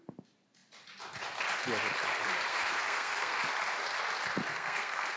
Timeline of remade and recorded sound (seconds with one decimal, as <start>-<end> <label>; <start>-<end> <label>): 0.0-2.5 recorded; 2.5-3.4 remade; 3.4-4.5 recorded; 4.5-5.2 remade